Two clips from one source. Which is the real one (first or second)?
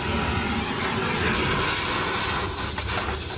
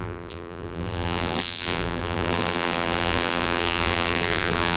first